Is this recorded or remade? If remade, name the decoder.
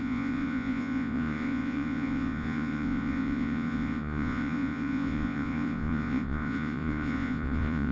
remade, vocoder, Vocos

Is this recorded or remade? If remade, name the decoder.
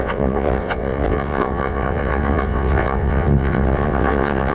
remade, vocoder, WaveNeXt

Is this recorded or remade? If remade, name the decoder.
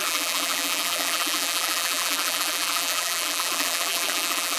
remade, vocoder, BigVGAN v2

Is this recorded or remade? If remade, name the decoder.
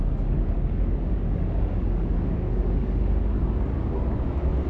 remade, codec, DAC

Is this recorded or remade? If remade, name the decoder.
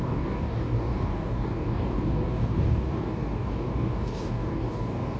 remade, codec, DAC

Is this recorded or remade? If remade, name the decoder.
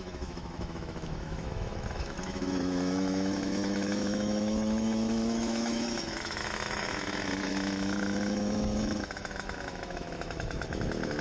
remade, autoencoder, DAC-VAE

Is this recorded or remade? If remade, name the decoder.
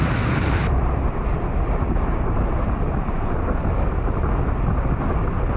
recorded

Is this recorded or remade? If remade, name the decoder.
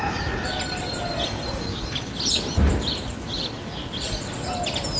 recorded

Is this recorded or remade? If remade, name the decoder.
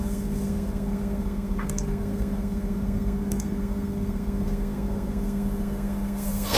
remade, codec, SNAC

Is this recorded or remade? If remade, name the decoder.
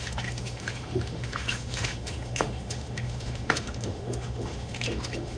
remade, autoencoder, DAC-VAE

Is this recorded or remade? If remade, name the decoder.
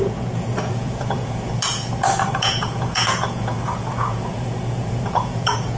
remade, vocoder, Vocos